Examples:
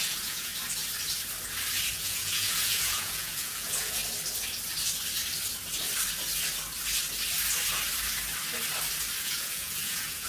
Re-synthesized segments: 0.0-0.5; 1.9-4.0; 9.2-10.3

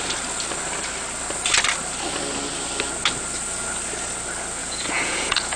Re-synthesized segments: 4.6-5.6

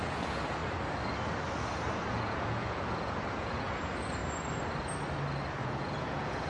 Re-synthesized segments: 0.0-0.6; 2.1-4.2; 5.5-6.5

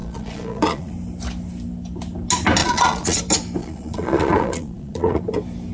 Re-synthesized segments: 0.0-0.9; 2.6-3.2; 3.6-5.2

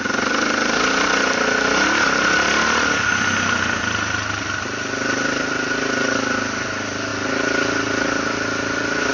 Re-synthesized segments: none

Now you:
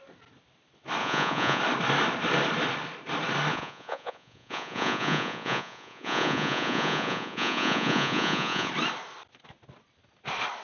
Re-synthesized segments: 1.0-1.6; 3.5-8.7

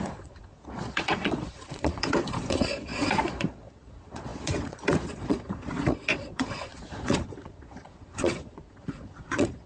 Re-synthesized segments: 0.0-9.7

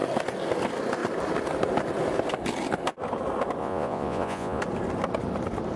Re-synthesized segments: 3.6-4.6